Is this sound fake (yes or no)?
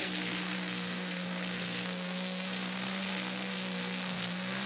yes